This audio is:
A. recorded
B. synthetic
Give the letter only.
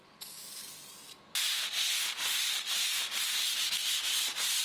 A